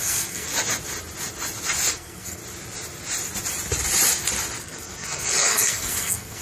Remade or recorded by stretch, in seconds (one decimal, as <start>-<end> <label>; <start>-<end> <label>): 0.0-0.5 remade; 0.5-1.9 recorded; 1.9-2.4 remade; 2.4-4.6 recorded; 4.6-6.4 remade